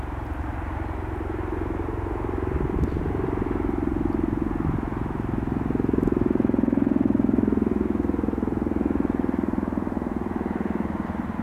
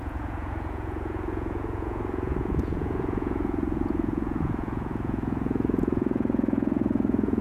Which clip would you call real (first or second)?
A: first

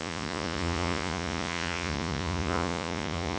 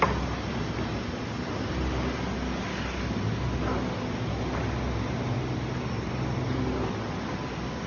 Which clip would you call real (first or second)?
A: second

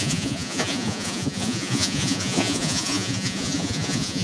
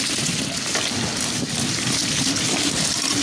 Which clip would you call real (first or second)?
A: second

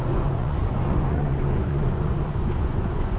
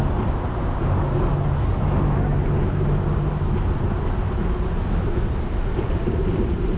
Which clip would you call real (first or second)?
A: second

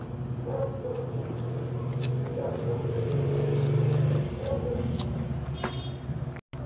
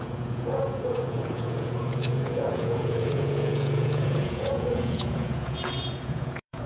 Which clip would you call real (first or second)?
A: first